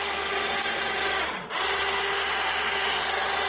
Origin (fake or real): real